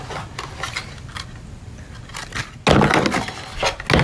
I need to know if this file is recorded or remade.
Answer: recorded